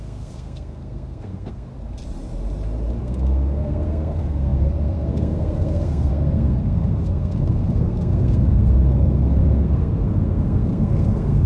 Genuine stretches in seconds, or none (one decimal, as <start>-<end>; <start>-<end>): 1.7-3.0